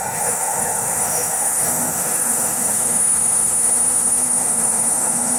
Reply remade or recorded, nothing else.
remade